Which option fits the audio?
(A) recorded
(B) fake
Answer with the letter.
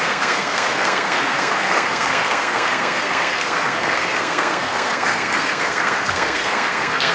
B